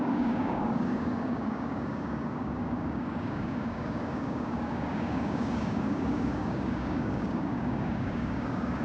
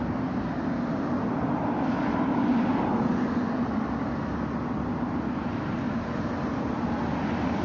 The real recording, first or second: second